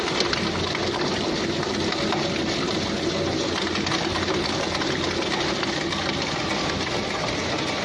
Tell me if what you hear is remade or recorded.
recorded